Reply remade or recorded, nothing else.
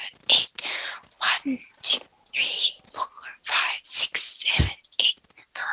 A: recorded